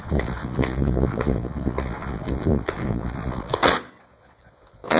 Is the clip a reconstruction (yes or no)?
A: yes